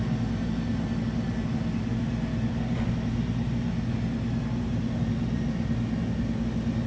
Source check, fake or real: real